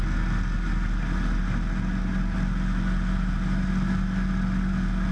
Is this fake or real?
real